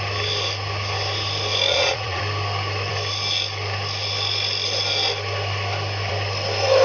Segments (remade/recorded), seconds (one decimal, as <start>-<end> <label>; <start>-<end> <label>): 0.0-1.7 recorded; 1.7-2.2 remade; 2.2-6.8 recorded